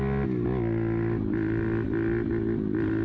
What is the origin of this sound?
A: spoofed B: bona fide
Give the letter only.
B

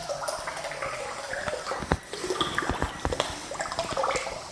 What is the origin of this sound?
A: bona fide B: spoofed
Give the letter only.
A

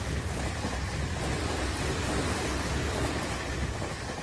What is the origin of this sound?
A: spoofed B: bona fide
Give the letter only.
B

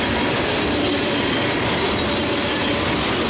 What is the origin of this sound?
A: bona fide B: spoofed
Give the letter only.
A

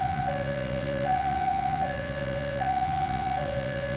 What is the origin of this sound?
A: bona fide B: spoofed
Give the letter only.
B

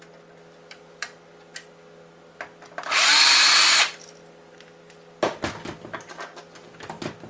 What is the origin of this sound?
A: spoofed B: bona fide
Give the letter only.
B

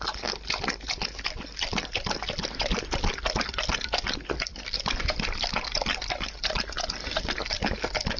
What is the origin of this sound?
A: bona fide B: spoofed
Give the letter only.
A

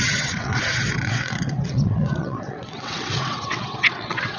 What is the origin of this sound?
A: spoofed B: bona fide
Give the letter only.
A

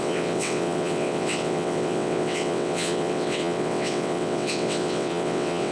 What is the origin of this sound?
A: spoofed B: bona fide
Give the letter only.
A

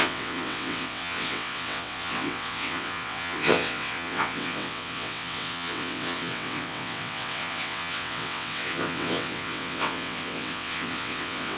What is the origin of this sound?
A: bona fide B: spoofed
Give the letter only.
B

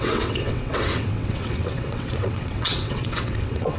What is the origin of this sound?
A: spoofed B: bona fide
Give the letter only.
A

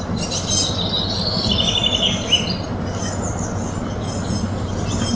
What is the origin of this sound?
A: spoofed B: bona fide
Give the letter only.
B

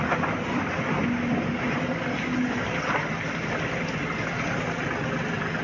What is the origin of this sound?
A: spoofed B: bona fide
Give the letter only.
B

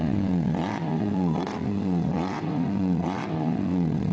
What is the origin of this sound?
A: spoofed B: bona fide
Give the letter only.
A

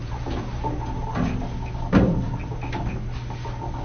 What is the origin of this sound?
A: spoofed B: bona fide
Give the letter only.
B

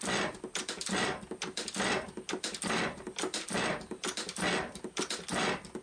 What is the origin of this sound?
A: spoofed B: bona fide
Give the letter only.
B